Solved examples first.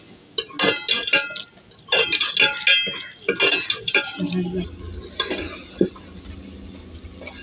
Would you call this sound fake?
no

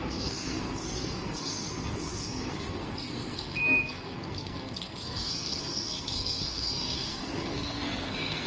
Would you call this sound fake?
yes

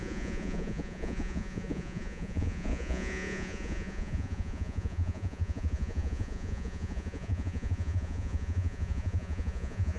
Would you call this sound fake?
yes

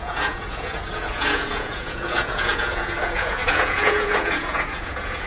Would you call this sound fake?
yes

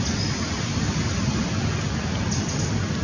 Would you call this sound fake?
no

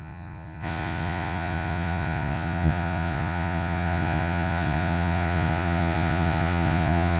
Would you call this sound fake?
yes